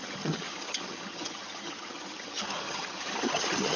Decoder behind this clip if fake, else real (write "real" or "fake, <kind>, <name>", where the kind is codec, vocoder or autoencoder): fake, vocoder, HiFi-GAN